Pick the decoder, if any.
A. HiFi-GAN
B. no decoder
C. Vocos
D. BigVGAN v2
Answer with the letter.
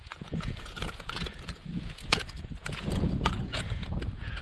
C